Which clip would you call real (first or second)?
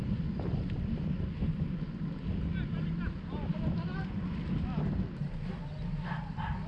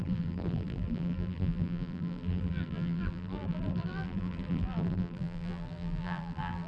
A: first